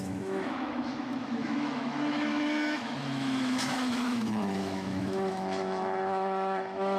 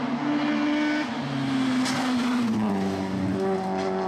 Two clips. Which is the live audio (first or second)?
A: second